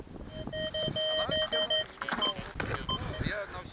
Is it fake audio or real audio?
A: real